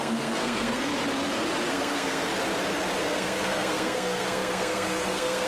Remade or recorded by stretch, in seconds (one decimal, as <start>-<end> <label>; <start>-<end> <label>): 0.0-0.9 remade; 0.9-1.7 recorded; 1.7-2.3 remade; 2.3-3.0 recorded; 3.0-5.5 remade